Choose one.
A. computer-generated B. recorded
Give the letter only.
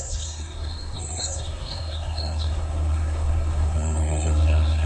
A